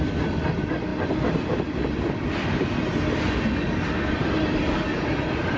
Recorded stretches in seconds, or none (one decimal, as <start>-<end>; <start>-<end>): 0.0-5.6